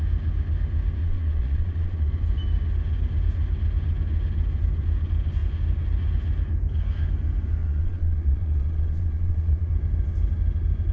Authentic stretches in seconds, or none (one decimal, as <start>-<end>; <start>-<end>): 0.0-1.0; 2.1-7.6; 9.7-10.9